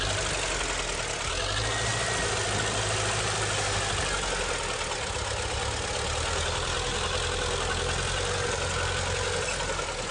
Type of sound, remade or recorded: recorded